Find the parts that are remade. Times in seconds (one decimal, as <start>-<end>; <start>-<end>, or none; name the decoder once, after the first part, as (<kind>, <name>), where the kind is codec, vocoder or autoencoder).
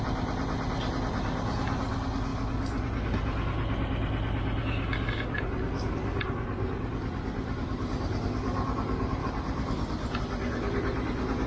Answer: none